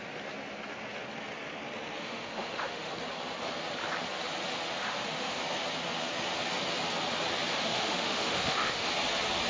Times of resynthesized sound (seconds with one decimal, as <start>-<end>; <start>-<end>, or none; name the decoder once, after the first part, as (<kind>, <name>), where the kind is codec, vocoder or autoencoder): 2.0-2.9 (autoencoder, DAC-VAE); 4.8-5.4; 7.5-8.9

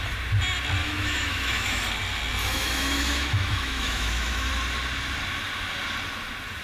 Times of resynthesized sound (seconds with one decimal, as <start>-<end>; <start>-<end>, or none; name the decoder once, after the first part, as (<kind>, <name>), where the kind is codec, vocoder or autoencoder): 0.8-1.8 (autoencoder, DAC-VAE); 2.4-4.5

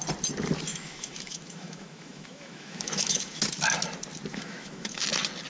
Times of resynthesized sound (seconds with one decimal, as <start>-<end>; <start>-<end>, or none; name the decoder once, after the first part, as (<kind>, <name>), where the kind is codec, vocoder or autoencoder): 0.7-3.4 (autoencoder, DAC-VAE); 4.3-5.0

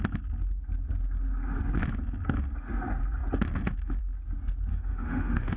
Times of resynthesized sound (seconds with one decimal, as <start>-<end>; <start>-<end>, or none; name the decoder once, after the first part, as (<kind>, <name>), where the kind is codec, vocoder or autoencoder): 4.7-5.6 (autoencoder, DAC-VAE)